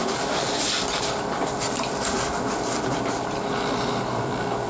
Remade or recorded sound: recorded